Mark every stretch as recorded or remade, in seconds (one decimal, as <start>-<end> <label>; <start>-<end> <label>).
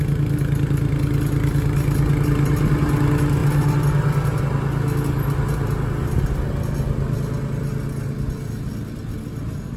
0.0-9.8 recorded